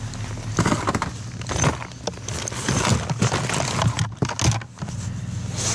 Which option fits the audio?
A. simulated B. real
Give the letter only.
B